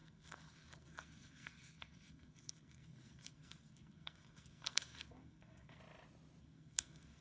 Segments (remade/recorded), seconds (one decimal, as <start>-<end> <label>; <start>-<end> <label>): 0.0-5.8 remade; 5.8-6.4 recorded; 6.4-7.2 remade